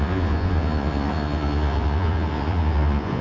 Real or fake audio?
fake